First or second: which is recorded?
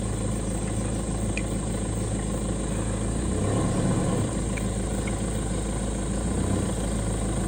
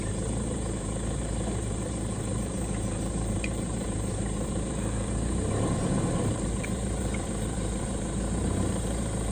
first